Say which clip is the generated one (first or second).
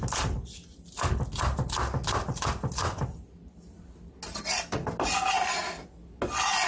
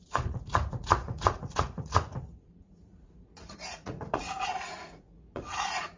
second